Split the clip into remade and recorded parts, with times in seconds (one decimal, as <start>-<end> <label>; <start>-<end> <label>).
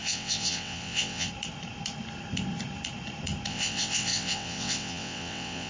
0.0-1.3 remade; 1.3-3.5 recorded; 3.5-5.7 remade